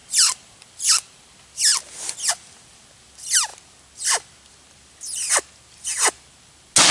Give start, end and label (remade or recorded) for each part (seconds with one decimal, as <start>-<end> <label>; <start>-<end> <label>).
0.0-6.9 recorded